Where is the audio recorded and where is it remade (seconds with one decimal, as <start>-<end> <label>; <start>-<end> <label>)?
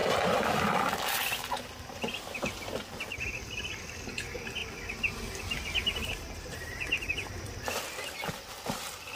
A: 0.0-6.0 recorded; 6.0-7.4 remade; 7.4-9.2 recorded